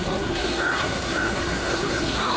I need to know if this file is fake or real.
fake